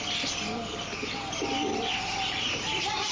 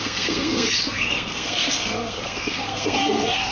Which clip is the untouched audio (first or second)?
first